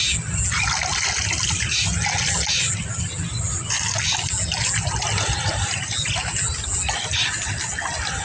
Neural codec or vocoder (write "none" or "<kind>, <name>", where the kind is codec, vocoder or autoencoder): none